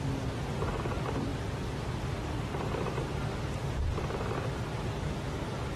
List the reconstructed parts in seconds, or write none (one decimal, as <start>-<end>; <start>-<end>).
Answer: none